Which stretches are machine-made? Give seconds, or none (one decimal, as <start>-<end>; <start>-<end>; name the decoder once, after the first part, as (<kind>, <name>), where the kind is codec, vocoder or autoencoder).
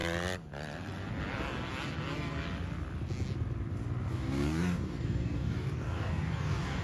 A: 4.1-6.8 (codec, DAC)